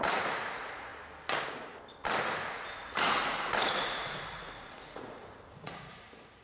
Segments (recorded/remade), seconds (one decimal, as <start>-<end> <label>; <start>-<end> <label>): 0.0-0.9 remade; 0.9-2.2 recorded; 2.2-6.4 remade